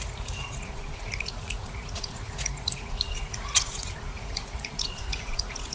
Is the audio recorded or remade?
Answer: remade